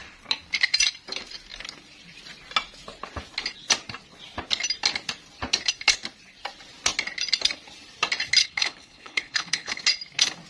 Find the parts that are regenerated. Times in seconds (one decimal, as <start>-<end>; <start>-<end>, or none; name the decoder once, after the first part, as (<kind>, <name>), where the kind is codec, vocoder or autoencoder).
8.4-9.8 (codec, HILCodec)